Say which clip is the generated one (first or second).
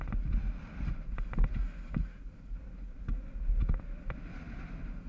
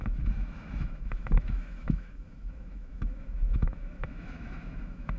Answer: second